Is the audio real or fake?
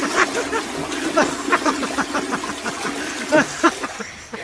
fake